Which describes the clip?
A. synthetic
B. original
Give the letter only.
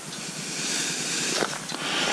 B